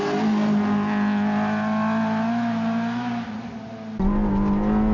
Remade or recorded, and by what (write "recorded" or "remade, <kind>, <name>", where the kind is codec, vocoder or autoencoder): recorded